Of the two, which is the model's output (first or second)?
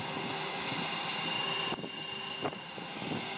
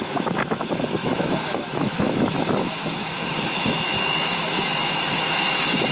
second